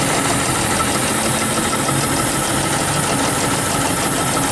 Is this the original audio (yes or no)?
yes